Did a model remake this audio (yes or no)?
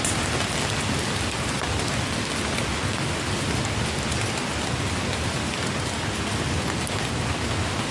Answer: no